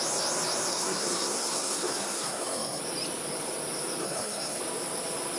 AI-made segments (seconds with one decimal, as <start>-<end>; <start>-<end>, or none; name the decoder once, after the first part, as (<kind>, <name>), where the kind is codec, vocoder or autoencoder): 0.7-2.8 (codec, SNAC); 4.0-4.6